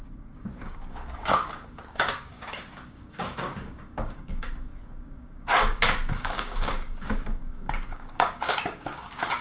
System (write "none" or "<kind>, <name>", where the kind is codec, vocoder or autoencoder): codec, DAC